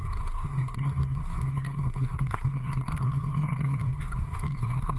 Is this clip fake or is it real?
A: fake